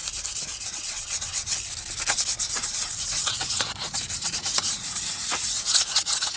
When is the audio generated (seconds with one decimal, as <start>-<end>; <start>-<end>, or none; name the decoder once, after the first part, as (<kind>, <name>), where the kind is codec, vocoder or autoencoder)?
3.0-6.4 (vocoder, Vocos)